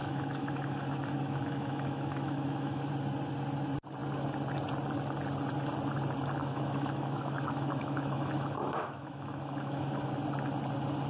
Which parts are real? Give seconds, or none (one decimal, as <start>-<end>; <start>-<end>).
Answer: 2.9-6.4; 10.1-11.1